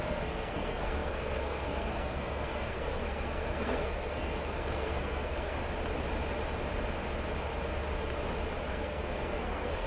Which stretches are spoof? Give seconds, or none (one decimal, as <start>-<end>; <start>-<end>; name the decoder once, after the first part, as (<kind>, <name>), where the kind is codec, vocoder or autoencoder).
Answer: 0.0-5.6 (codec, SNAC); 8.7-9.9

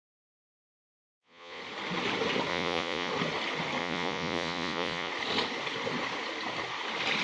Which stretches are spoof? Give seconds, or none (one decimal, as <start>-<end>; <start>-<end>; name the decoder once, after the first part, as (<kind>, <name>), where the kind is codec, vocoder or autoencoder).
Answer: 1.0-1.6 (vocoder, Vocos); 2.5-3.1; 3.8-5.1